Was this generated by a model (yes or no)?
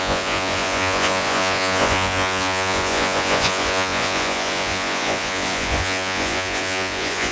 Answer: yes